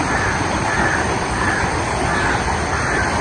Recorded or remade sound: recorded